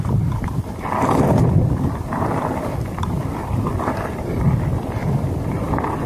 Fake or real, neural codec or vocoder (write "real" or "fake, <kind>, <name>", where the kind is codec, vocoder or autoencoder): fake, vocoder, BigVGAN v2